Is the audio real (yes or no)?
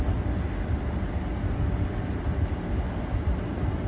yes